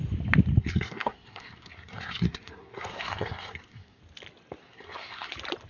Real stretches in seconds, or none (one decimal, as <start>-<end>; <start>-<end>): 0.0-0.6; 4.0-4.6; 5.3-5.7